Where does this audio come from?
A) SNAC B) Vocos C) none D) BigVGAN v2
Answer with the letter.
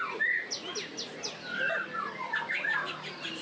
C